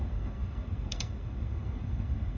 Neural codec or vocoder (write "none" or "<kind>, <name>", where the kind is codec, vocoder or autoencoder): codec, SNAC